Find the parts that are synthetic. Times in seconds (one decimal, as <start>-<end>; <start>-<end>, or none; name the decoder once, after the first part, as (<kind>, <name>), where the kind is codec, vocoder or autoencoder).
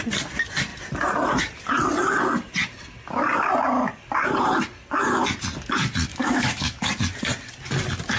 6.1-6.9 (autoencoder, DAC-VAE)